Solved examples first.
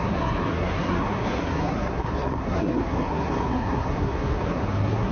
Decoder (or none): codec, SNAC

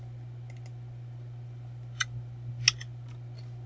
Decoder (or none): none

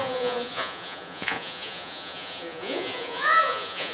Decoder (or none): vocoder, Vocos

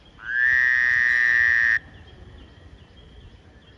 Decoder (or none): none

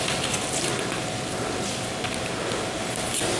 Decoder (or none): none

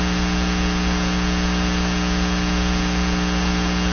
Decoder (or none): none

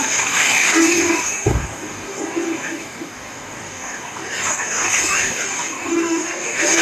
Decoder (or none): codec, DAC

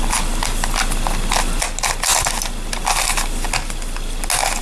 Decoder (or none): none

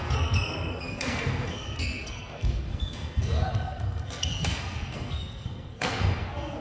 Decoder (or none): codec, SNAC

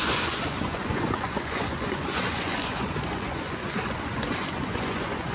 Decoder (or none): vocoder, Vocos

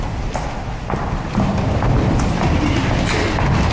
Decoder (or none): none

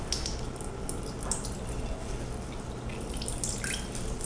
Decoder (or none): none